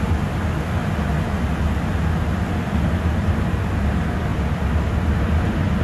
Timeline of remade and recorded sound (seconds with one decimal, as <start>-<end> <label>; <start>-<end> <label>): 0.0-5.8 recorded